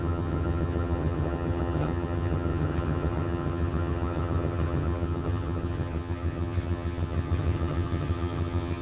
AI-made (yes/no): yes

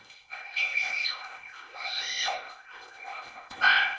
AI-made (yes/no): yes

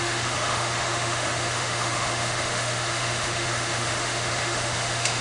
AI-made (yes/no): yes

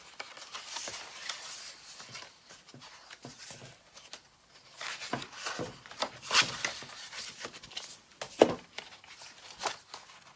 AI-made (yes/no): no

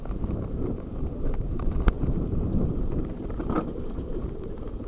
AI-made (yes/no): yes